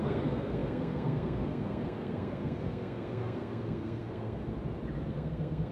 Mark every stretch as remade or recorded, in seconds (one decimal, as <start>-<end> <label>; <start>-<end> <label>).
0.0-4.4 remade; 4.4-5.1 recorded; 5.1-5.7 remade